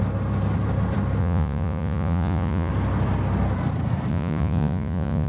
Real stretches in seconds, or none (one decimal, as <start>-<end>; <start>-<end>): 0.0-1.2; 2.7-4.1